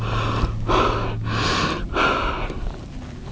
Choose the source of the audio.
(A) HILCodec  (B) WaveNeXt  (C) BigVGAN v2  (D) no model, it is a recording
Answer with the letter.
D